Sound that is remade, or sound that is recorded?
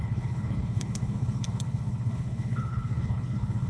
remade